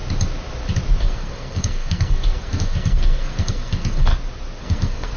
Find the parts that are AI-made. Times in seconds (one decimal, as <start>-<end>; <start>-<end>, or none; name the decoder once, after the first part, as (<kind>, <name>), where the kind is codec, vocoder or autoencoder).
1.0-4.1 (codec, SNAC); 4.6-5.2